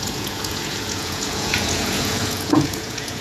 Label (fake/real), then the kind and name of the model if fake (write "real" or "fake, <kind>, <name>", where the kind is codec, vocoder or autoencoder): fake, vocoder, Vocos